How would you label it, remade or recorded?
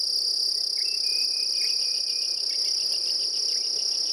recorded